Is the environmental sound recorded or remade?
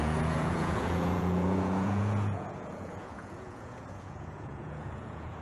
remade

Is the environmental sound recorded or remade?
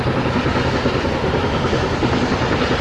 recorded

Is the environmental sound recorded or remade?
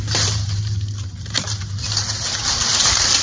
remade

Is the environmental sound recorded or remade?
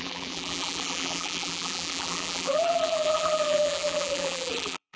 remade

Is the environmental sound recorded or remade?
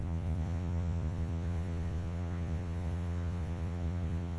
remade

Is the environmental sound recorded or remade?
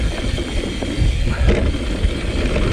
recorded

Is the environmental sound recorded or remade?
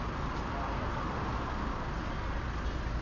recorded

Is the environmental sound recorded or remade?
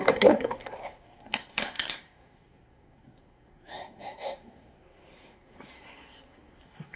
remade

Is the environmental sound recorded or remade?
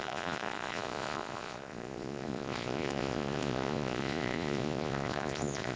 remade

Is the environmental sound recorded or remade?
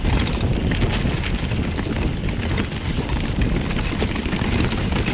recorded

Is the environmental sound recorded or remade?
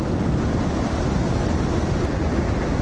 remade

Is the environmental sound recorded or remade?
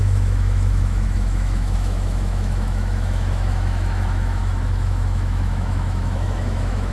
remade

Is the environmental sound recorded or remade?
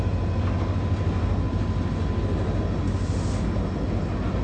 recorded